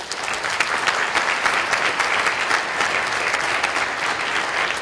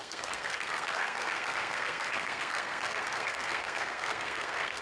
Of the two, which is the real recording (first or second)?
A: first